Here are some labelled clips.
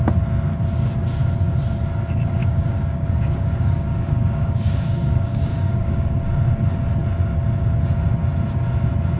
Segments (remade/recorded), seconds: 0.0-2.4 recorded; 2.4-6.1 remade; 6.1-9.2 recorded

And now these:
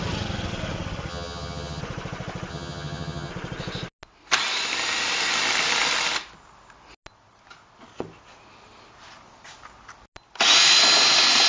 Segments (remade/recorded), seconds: 0.0-1.1 recorded; 1.1-1.8 remade; 1.8-2.5 recorded; 2.5-3.3 remade; 3.3-11.5 recorded

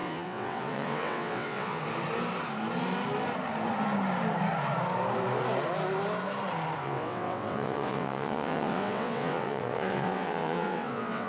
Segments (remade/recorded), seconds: 0.0-1.8 remade; 1.8-6.8 recorded; 6.8-11.3 remade

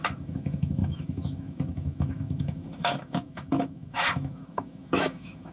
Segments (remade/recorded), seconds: 0.0-5.5 remade